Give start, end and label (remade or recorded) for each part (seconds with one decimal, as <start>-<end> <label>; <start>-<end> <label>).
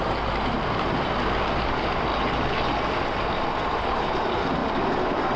0.0-5.4 recorded